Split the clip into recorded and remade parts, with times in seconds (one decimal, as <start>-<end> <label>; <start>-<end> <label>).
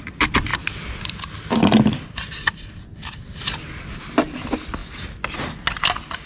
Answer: 0.0-6.3 recorded